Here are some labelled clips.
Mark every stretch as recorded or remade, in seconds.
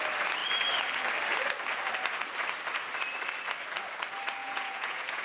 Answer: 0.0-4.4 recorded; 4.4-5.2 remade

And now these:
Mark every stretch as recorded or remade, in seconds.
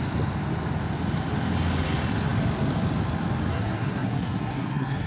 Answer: 0.0-3.5 recorded; 3.5-5.1 remade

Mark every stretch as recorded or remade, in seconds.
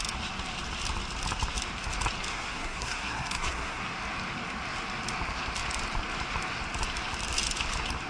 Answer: 0.0-2.3 recorded; 2.3-3.8 remade; 3.8-8.1 recorded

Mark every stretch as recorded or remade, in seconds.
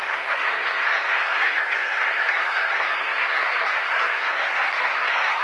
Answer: 0.0-5.4 remade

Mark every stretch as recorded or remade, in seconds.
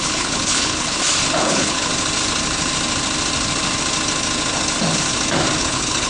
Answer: 0.0-1.0 remade; 1.0-1.5 recorded; 1.5-1.9 remade; 1.9-5.6 recorded; 5.6-6.1 remade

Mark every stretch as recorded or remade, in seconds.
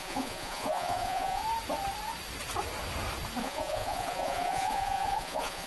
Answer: 0.0-1.4 remade; 1.4-3.4 recorded; 3.4-5.7 remade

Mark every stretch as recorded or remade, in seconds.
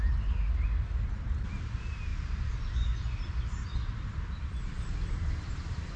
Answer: 0.0-6.0 recorded